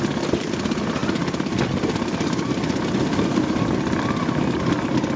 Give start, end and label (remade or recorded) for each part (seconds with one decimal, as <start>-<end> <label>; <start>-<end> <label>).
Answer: 0.0-5.2 recorded